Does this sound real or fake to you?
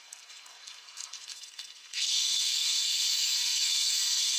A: fake